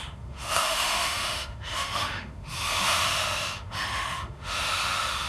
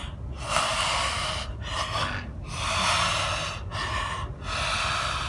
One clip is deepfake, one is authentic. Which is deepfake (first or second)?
first